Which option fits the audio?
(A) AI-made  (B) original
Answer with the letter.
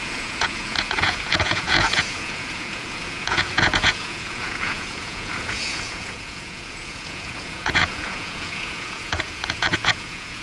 A